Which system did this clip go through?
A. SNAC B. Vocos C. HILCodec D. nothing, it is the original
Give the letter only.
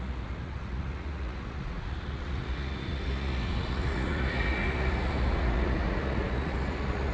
B